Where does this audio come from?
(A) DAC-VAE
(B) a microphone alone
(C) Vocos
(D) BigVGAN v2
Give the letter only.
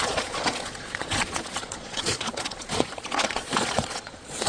C